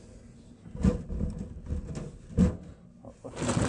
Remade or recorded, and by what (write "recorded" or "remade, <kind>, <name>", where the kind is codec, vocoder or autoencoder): recorded